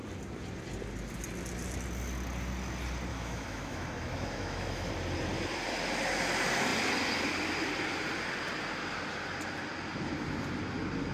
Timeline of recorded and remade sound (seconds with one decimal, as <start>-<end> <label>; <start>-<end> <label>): 0.0-3.1 recorded; 3.1-4.9 remade; 4.9-11.1 recorded